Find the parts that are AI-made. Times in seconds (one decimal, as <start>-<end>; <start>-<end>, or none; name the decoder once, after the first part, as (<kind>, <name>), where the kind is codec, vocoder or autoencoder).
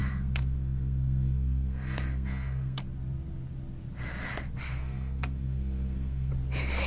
0.0-2.8 (codec, SNAC); 4.8-6.3